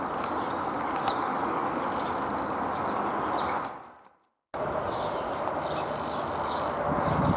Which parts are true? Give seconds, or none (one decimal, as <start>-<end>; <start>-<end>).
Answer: 0.0-7.4